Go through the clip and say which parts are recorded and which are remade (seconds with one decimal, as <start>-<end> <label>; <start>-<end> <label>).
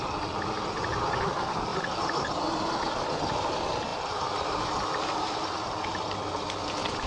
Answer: 0.0-1.7 recorded; 1.7-2.4 remade; 2.4-3.9 recorded; 3.9-5.5 remade; 5.5-7.1 recorded